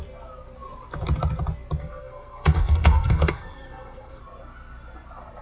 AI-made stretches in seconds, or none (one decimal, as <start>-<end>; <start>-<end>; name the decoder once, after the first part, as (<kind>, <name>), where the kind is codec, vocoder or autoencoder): 1.8-4.2 (codec, SNAC)